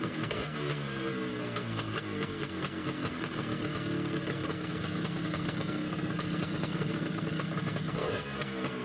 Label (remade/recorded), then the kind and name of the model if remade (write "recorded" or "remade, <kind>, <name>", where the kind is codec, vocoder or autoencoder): remade, codec, SNAC